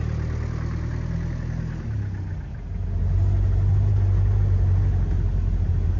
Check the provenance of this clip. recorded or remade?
recorded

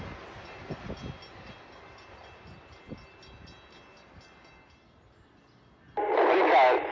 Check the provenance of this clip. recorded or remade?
recorded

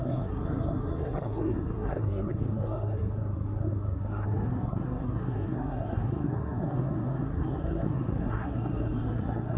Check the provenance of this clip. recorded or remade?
remade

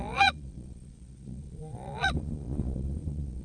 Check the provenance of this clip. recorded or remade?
remade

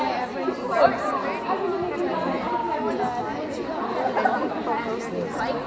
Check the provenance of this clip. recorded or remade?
recorded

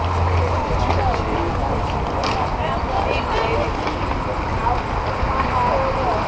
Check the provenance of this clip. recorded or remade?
recorded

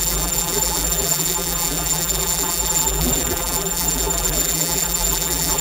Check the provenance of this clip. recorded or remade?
remade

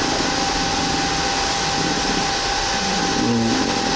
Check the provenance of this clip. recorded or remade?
recorded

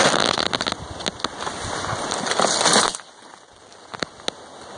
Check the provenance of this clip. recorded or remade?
recorded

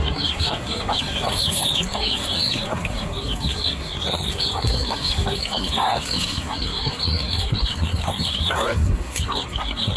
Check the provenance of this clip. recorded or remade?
remade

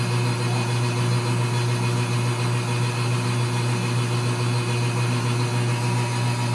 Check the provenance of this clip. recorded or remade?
recorded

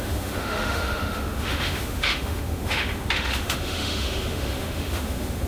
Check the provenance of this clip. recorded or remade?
remade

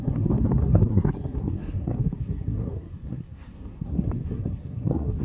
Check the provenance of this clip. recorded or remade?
remade